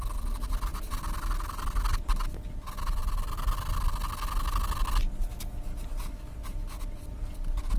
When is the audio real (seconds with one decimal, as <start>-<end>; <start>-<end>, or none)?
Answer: 0.0-7.8